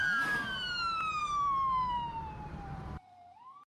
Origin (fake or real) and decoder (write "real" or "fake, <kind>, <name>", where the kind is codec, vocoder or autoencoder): fake, vocoder, BigVGAN v2